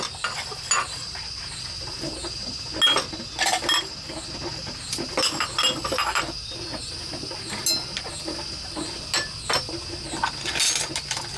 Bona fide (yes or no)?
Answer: yes